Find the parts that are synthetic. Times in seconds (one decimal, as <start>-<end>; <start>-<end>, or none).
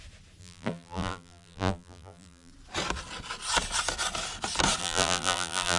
0.4-2.5; 4.8-5.8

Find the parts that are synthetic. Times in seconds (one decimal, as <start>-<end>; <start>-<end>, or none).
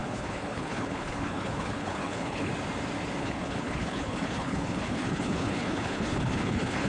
0.0-2.5; 3.2-6.9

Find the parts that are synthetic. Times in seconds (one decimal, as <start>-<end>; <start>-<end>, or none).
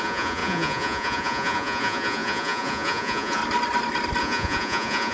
0.0-3.4; 4.2-5.1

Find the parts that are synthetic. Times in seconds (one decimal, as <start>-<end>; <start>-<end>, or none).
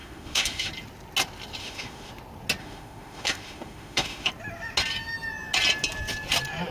0.0-0.7; 1.6-2.1; 2.6-4.3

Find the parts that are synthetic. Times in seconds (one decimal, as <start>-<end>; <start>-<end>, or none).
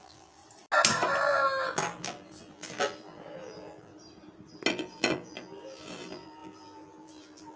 0.0-0.4; 1.2-3.9; 4.7-7.6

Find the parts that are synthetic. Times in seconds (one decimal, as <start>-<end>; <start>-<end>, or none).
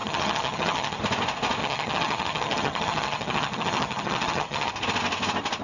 0.0-1.0; 1.6-4.7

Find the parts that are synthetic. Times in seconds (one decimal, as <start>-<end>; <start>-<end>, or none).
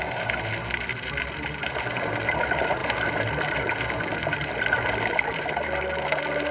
none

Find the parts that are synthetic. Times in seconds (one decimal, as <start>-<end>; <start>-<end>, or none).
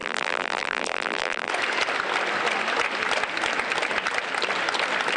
0.0-1.5